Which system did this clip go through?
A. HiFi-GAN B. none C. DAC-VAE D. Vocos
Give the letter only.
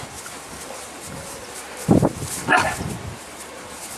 B